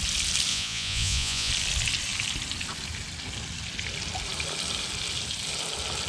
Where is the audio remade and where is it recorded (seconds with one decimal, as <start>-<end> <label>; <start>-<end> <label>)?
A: 0.0-0.5 recorded; 0.5-1.5 remade; 1.5-6.1 recorded